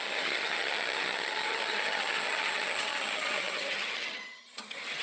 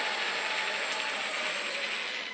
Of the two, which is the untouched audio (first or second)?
second